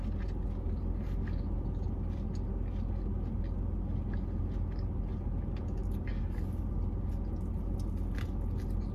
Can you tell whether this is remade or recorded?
recorded